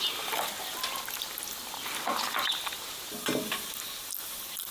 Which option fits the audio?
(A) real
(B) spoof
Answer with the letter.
A